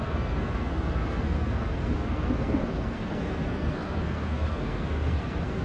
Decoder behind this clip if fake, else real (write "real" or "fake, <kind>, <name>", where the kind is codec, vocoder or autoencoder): fake, codec, SNAC